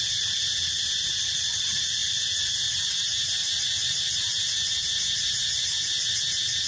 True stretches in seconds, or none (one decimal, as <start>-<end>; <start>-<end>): 0.0-6.7